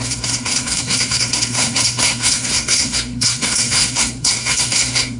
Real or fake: fake